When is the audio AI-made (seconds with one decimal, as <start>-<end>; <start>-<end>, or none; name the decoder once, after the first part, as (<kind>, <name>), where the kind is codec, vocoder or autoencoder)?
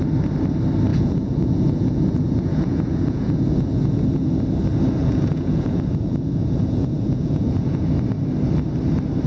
0.9-4.4 (vocoder, Vocos); 5.0-7.9